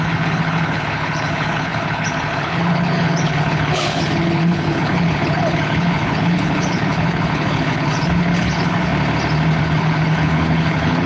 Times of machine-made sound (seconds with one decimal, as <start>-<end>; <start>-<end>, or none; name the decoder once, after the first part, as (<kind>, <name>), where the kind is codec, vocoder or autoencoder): 0.0-8.9 (codec, HILCodec); 9.6-11.1